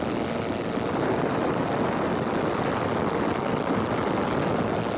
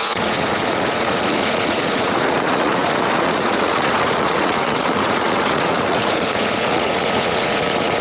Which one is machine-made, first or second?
second